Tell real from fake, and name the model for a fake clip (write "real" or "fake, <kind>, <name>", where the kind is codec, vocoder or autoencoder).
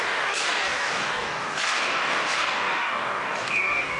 fake, codec, DAC